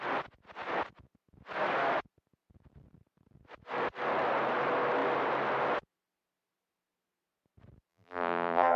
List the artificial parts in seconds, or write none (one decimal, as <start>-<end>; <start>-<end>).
7.9-8.8